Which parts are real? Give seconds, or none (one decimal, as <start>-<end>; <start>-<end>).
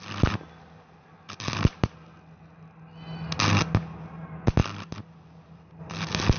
0.0-6.4